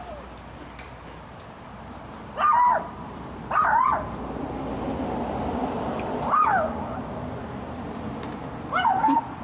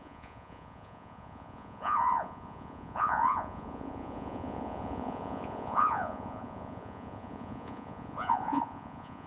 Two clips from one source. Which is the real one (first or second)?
first